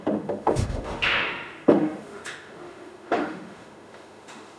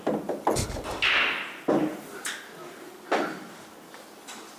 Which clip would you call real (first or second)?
second